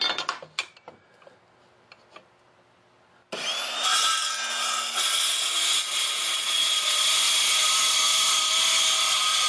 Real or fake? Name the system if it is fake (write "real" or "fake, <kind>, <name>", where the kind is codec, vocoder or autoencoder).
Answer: real